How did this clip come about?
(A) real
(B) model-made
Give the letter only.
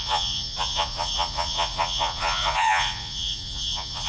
B